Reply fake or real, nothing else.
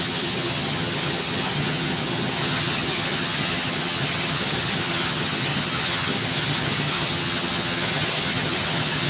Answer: fake